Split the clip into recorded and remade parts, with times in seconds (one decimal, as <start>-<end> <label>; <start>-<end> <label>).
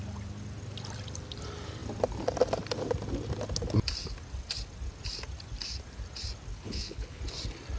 0.0-6.5 recorded; 6.5-7.2 remade; 7.2-7.8 recorded